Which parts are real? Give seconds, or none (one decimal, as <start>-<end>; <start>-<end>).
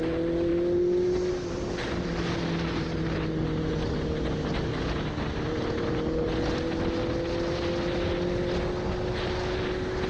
0.0-10.1